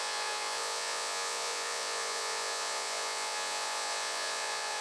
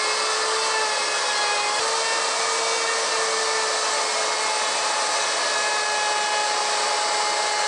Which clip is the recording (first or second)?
second